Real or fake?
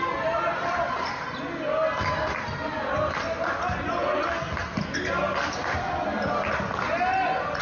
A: real